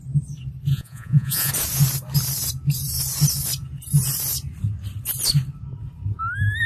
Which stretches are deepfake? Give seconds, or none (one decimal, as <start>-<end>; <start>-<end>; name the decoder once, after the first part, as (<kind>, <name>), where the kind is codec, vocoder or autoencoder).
0.7-1.5 (vocoder, Vocos)